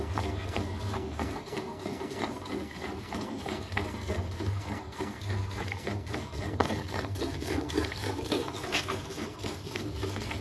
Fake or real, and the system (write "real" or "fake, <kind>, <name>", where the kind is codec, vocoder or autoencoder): fake, codec, SNAC